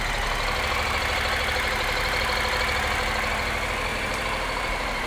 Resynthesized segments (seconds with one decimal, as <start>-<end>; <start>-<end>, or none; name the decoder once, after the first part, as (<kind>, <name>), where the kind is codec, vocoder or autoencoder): 3.9-5.1 (vocoder, BigVGAN v2)